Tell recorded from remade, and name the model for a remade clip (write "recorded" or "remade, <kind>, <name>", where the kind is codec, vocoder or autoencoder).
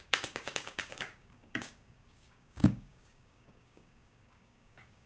remade, codec, DAC